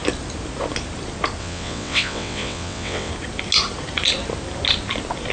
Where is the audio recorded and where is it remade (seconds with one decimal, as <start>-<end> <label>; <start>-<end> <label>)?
0.0-1.4 recorded; 1.4-3.1 remade; 3.1-5.3 recorded